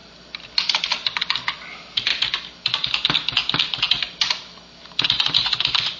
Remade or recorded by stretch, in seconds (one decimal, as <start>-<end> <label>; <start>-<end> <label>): 0.0-6.0 recorded